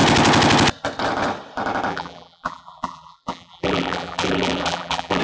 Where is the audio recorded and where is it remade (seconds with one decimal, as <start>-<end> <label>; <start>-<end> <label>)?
0.0-1.9 recorded; 1.9-5.2 remade